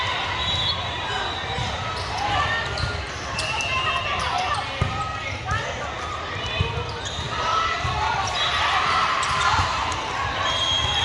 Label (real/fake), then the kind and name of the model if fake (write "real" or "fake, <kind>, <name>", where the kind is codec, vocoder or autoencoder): real